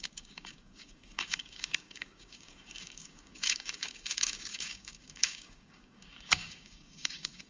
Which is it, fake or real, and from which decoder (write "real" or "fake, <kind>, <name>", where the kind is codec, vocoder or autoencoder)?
fake, codec, DAC